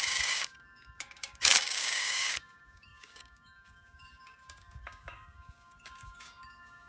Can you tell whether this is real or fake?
fake